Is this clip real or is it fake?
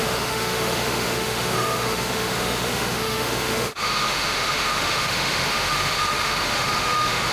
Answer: fake